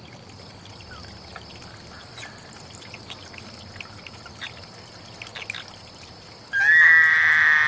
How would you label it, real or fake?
real